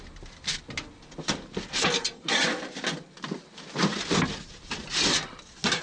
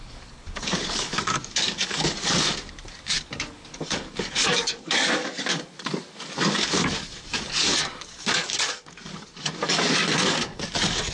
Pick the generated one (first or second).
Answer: second